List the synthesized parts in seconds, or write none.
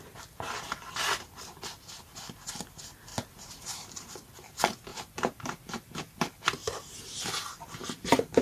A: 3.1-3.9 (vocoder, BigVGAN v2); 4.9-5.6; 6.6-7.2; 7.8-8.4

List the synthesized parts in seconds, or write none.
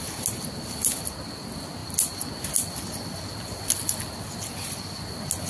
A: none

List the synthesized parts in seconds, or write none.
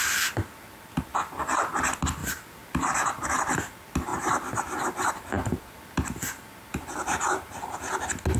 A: 1.1-1.7 (vocoder, BigVGAN v2); 2.2-3.5; 4.1-5.8